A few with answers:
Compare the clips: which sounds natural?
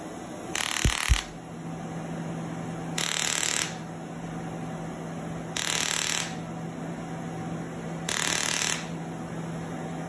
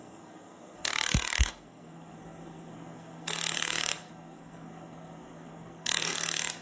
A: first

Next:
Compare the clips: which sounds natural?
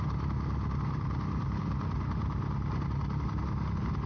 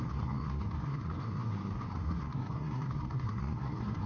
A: first